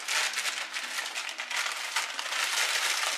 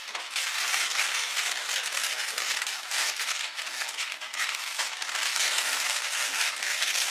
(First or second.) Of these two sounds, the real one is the first